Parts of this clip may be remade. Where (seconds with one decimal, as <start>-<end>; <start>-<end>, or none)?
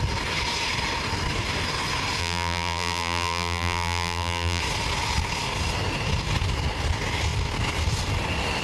2.2-4.6